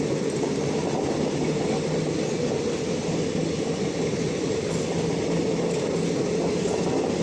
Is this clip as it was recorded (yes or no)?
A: yes